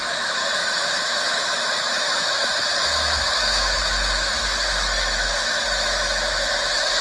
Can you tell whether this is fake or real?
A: fake